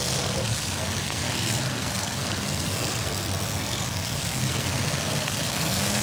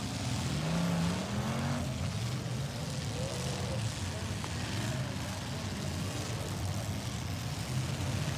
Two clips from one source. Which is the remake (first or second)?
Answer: first